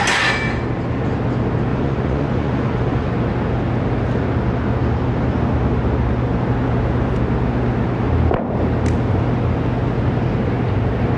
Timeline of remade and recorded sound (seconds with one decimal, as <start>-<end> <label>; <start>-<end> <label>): 0.0-1.7 recorded; 1.7-3.1 remade; 3.1-11.2 recorded